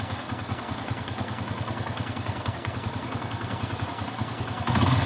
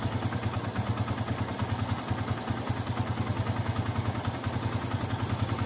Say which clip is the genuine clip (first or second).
second